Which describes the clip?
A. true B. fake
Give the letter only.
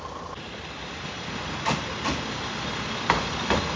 A